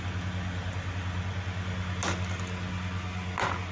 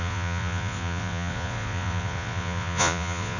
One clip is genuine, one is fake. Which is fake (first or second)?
second